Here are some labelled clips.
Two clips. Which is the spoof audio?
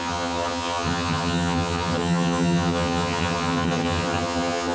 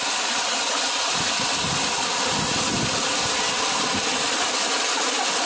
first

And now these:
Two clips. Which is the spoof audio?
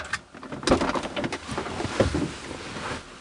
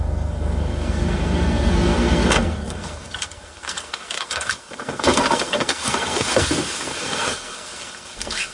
second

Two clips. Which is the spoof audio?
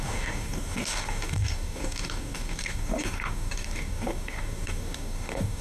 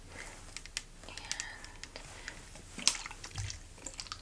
first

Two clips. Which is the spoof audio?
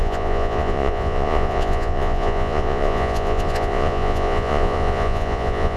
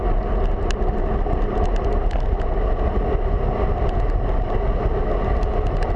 first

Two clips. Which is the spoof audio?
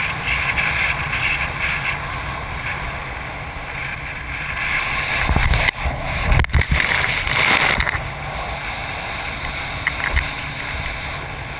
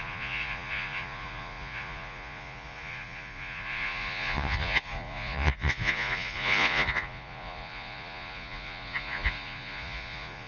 second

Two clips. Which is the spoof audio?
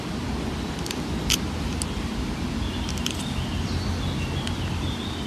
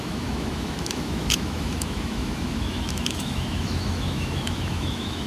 second